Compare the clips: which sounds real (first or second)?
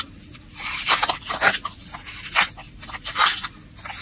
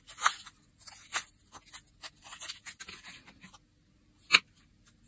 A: second